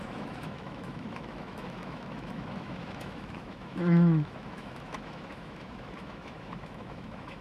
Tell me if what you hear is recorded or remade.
remade